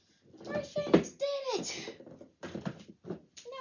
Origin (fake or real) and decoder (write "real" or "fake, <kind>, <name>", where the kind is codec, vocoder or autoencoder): real